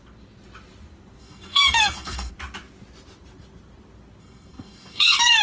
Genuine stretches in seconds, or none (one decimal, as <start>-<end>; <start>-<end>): 0.0-1.2; 2.3-4.2